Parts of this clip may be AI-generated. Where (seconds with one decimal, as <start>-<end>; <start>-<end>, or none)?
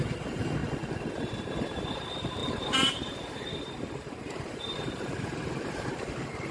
0.0-0.6; 1.6-6.5